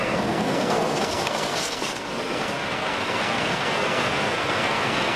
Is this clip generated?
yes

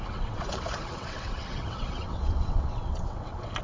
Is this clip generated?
yes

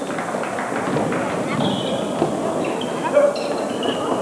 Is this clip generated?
no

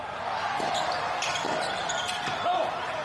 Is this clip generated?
yes